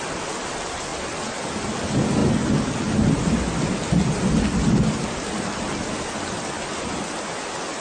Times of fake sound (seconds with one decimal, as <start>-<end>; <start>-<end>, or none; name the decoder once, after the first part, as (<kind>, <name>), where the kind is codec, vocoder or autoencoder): none